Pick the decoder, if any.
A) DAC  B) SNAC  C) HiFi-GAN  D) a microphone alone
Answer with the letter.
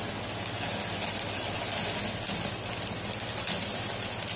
D